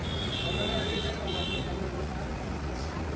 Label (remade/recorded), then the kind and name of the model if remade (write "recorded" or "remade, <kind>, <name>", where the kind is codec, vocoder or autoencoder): remade, vocoder, Vocos